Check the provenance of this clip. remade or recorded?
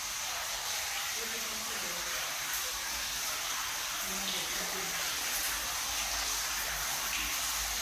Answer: recorded